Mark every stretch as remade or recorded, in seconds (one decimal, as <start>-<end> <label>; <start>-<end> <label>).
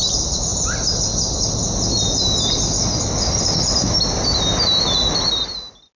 0.0-6.0 recorded